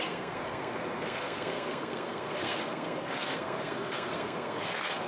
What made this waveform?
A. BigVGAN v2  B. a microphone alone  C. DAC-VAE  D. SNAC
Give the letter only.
D